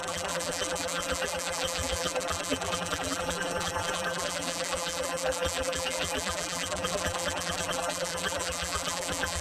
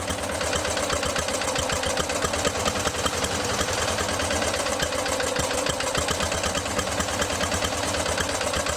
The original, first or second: second